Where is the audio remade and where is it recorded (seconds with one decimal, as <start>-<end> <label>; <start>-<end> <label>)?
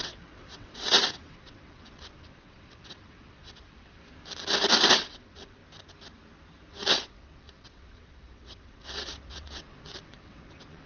0.0-4.0 remade; 4.0-4.9 recorded; 4.9-5.6 remade; 5.6-6.7 recorded; 6.7-10.9 remade